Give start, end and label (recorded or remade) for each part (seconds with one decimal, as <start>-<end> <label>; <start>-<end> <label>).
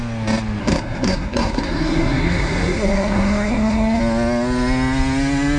0.0-0.6 recorded; 0.6-4.0 remade; 4.0-5.6 recorded